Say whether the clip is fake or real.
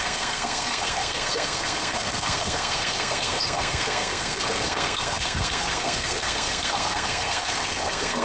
fake